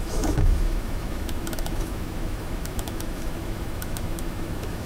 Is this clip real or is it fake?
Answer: fake